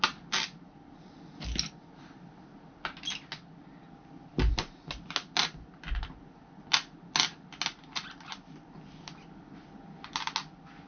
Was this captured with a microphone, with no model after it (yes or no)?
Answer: yes